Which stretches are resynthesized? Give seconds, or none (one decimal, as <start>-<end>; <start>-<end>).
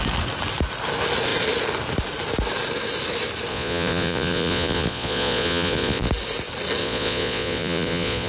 3.5-6.1; 6.8-8.3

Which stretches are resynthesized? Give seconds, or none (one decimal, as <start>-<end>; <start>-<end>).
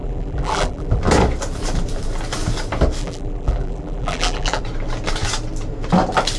0.0-1.0; 3.0-4.6